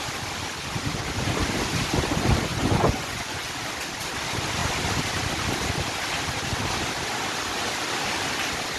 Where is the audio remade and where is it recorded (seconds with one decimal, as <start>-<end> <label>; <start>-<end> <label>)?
0.0-2.5 recorded; 2.5-3.5 remade; 3.5-8.8 recorded